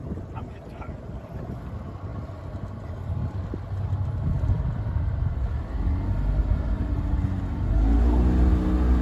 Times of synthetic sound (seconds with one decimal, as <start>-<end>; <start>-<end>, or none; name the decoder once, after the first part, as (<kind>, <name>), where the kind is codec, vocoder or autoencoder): none